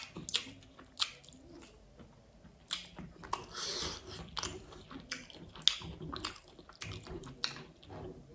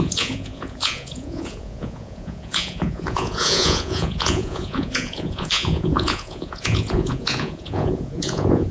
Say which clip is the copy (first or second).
second